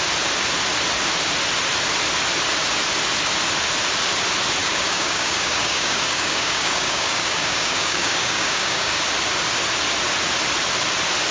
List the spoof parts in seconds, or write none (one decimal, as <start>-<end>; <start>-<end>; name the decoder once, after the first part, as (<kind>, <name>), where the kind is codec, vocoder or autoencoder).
4.6-9.0 (codec, DAC)